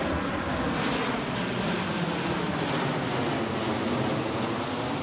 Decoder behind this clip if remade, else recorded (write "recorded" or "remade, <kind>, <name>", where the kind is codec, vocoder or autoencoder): recorded